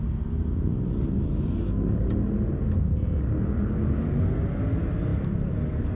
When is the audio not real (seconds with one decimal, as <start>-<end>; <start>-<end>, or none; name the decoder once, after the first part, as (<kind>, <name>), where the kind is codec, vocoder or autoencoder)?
none